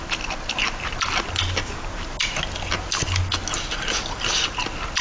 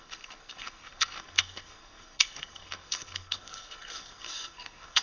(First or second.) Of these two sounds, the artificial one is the second